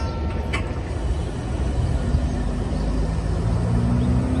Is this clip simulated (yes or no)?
no